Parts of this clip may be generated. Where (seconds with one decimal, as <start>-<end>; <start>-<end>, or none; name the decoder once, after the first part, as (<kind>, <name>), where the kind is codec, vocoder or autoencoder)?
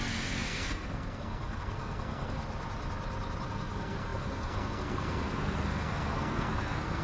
0.0-2.4 (codec, SNAC); 3.5-7.0